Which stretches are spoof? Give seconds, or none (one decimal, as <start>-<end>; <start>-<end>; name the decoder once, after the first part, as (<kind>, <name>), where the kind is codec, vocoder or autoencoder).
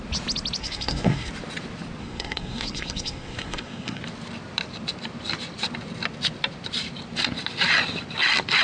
0.6-1.3 (codec, SNAC); 2.0-4.0